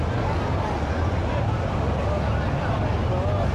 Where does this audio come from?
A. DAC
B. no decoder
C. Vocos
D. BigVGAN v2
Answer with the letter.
B